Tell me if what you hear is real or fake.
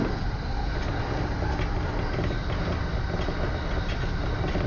real